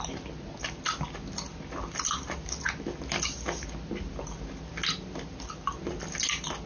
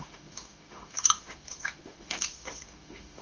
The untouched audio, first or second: first